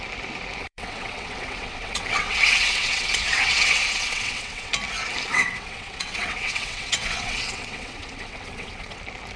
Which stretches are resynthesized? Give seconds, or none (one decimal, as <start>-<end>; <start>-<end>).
0.6-4.7; 5.3-9.0